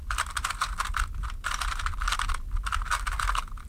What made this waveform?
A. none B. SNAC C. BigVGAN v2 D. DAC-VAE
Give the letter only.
A